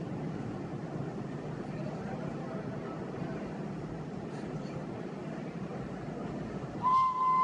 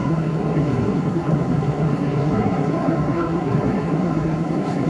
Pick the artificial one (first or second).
second